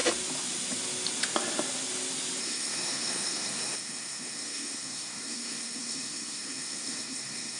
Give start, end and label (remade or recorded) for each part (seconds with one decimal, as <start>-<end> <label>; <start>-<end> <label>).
0.0-2.4 recorded; 2.4-7.6 remade